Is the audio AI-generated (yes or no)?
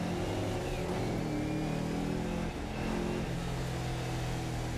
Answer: no